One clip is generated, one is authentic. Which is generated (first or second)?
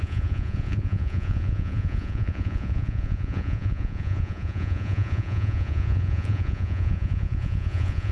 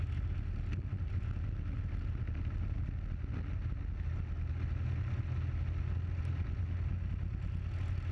first